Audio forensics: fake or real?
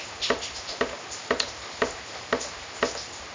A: real